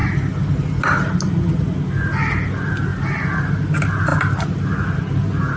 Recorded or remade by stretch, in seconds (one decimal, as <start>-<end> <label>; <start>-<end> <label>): 0.0-5.6 recorded